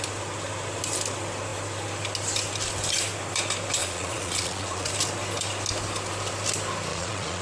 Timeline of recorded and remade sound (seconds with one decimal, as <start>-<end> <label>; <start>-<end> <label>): 0.0-3.8 recorded; 3.8-4.9 remade; 4.9-6.9 recorded; 6.9-7.4 remade